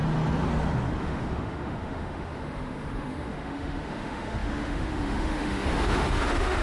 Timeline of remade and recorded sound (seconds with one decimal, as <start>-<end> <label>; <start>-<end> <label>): 0.0-1.0 recorded; 1.0-6.6 remade